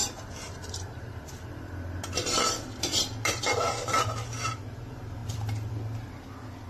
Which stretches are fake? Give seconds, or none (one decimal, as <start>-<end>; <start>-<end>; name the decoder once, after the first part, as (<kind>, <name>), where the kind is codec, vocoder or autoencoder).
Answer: 0.0-4.0 (vocoder, BigVGAN v2); 5.2-5.7